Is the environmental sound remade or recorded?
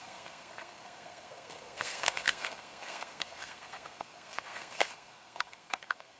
remade